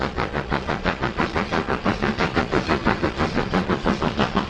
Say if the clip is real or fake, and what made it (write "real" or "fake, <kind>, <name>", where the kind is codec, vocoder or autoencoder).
fake, vocoder, Vocos